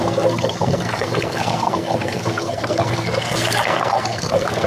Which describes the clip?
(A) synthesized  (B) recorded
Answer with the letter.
A